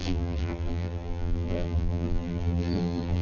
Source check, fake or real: fake